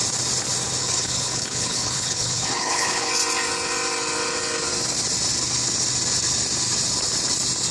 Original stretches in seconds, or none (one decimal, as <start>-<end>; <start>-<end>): 0.0-0.8; 3.1-7.7